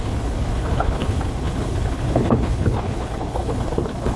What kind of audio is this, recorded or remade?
remade